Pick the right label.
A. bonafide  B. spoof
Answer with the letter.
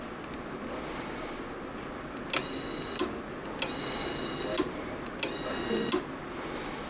A